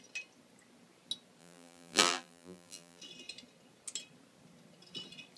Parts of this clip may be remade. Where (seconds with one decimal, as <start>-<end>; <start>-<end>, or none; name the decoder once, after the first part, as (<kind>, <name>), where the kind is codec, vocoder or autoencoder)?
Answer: 1.4-3.0 (vocoder, BigVGAN v2)